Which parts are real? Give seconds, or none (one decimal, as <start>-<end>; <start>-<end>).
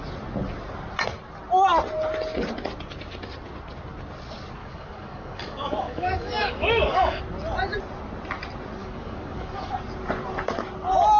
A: 0.0-4.6; 7.2-8.8; 9.8-11.2